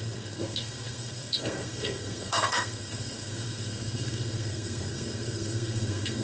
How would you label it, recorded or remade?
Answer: remade